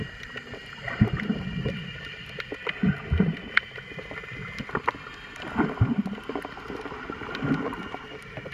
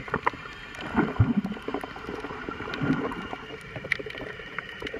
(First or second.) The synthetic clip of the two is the second